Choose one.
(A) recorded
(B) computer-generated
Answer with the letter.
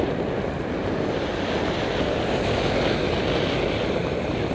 A